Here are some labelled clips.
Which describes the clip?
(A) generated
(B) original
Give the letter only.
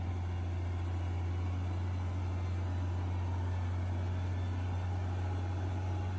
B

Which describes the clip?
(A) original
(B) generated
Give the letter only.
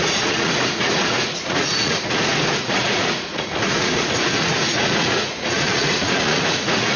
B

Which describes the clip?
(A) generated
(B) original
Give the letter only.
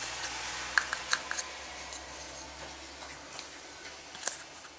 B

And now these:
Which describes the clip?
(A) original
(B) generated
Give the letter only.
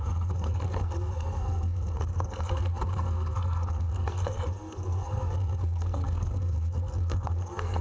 B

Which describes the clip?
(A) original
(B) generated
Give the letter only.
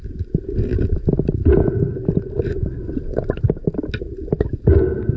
A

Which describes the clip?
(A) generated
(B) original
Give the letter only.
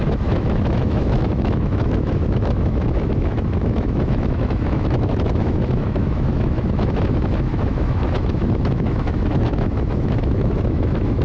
A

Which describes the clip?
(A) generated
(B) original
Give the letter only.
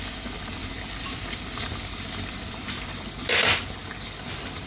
A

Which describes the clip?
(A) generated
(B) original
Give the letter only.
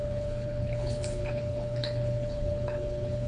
A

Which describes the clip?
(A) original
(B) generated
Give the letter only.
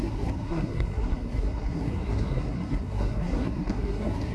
B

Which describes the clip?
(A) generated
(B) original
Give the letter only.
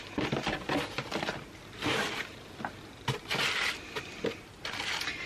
B